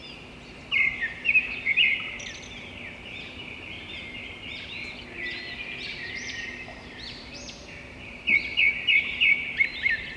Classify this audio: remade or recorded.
remade